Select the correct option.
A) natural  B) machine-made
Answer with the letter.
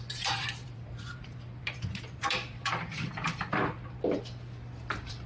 B